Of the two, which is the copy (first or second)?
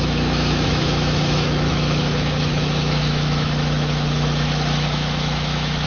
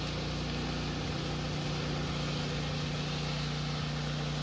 first